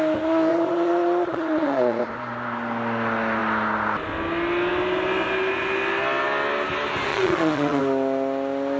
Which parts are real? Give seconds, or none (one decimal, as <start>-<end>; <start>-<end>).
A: 0.0-0.5; 2.0-7.1; 7.8-8.8